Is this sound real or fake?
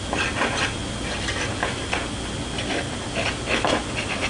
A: real